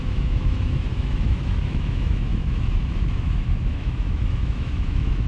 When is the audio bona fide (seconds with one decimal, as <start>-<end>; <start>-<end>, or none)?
none